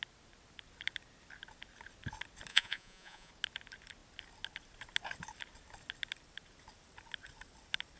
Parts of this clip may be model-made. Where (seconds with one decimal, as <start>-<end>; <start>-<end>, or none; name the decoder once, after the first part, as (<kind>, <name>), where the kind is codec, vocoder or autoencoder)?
2.5-3.3 (vocoder, Vocos)